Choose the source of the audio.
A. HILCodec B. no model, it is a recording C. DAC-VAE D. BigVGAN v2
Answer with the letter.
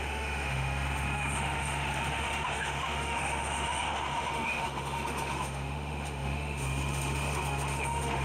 C